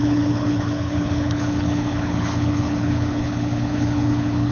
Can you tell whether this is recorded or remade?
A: remade